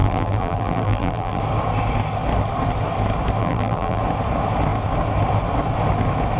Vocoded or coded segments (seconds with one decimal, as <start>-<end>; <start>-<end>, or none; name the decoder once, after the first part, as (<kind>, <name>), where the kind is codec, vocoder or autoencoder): 0.0-1.4 (vocoder, BigVGAN v2); 3.4-4.0